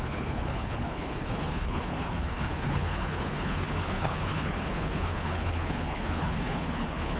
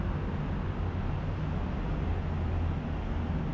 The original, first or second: second